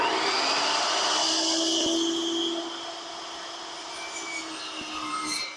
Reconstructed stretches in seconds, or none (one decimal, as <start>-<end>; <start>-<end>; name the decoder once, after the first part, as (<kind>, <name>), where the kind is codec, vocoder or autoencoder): none